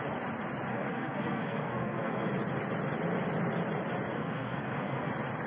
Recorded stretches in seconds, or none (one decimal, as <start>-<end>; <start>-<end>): 0.0-0.7; 2.3-4.1; 5.1-5.5